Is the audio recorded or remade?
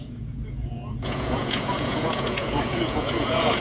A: remade